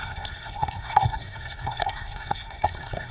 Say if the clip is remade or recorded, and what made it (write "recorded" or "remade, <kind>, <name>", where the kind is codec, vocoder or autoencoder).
remade, codec, SNAC